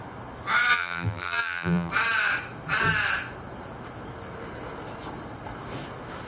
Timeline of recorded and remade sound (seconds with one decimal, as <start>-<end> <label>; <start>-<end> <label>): 0.0-0.7 recorded; 0.7-1.9 remade; 1.9-6.3 recorded